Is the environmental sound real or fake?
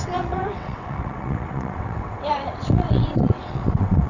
fake